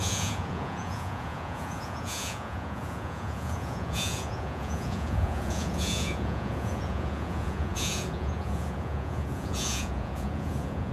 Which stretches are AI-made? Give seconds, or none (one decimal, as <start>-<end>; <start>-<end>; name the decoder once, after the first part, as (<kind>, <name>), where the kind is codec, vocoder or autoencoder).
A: 0.0-10.9 (vocoder, Vocos)